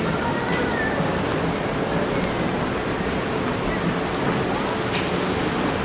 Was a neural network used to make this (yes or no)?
no